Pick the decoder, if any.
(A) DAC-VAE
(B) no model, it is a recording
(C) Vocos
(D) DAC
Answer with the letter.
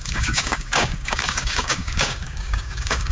D